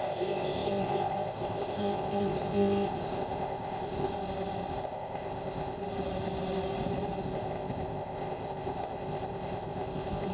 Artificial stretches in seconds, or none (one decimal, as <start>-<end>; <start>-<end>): 0.0-4.1; 4.7-5.8; 7.2-10.3